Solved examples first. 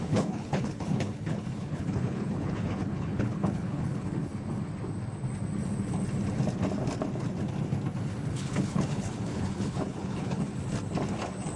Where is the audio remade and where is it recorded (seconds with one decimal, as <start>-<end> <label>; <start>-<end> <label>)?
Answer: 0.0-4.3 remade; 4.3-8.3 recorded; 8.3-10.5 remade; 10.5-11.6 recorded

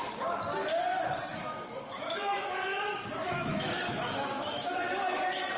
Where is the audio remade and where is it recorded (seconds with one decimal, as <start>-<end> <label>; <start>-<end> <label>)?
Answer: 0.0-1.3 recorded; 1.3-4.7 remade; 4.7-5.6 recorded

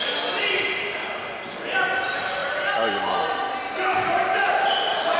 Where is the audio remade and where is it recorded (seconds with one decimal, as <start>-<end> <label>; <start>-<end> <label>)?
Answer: 0.0-5.2 recorded

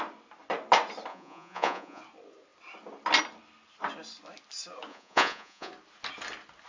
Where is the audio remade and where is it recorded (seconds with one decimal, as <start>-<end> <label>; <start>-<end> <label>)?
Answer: 0.0-1.1 recorded; 1.1-2.0 remade; 2.0-4.9 recorded; 4.9-5.7 remade; 5.7-6.7 recorded

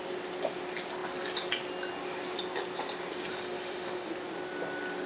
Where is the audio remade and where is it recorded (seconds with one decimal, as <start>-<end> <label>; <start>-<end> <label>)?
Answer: 0.0-3.3 recorded; 3.3-4.1 remade; 4.1-5.1 recorded

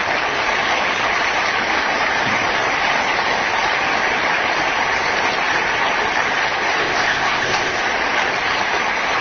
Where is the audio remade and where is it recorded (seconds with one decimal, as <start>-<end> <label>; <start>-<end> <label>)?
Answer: 0.0-6.8 recorded; 6.8-7.8 remade; 7.8-9.2 recorded

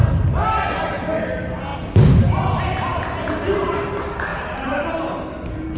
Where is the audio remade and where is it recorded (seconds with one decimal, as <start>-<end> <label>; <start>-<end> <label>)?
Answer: 0.0-5.8 recorded